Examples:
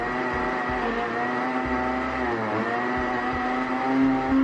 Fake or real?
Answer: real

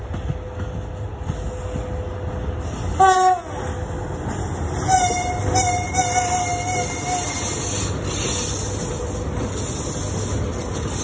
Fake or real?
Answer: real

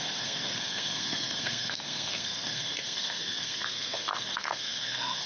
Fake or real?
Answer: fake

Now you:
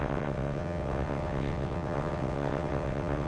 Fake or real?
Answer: fake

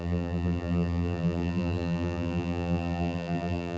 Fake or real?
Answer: fake